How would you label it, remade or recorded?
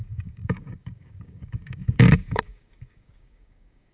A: remade